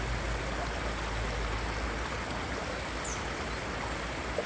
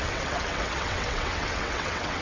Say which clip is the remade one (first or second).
second